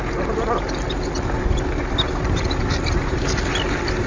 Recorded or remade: recorded